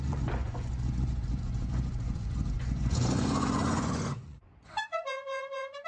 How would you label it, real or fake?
fake